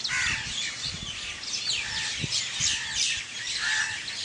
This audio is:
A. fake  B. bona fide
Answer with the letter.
B